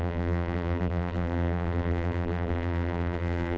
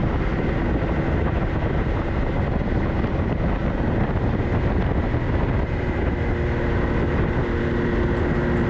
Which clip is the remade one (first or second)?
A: first